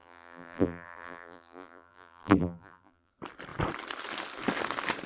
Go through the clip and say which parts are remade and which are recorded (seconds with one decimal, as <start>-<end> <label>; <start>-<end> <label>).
0.0-3.1 remade; 3.1-5.1 recorded